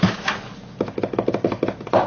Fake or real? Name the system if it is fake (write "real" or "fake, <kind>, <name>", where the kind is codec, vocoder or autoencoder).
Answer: real